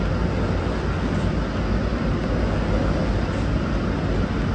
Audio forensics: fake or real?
real